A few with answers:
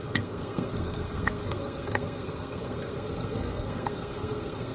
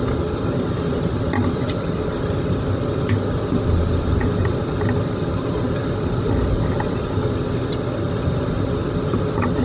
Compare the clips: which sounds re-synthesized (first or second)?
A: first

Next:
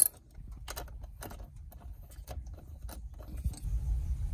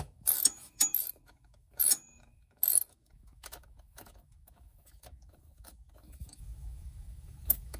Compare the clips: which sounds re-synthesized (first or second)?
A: second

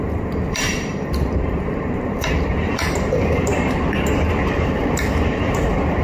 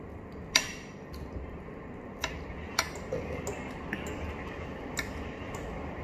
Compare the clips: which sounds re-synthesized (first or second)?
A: first